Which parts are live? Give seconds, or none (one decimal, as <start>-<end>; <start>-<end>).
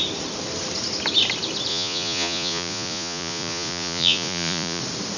0.0-1.7; 4.8-5.2